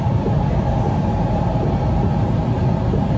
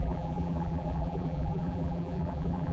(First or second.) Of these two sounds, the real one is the first